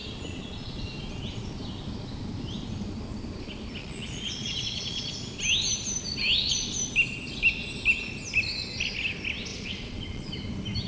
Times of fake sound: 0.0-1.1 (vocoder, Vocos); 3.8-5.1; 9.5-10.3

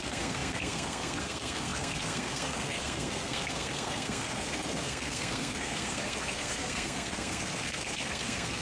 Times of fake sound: 0.0-8.6 (codec, SNAC)

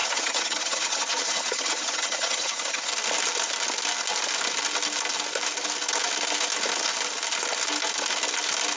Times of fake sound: 0.0-2.9 (vocoder, HiFi-GAN)